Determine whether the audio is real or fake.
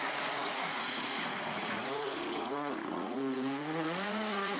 fake